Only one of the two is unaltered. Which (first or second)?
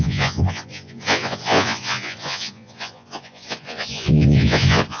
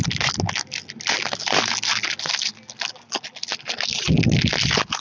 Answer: second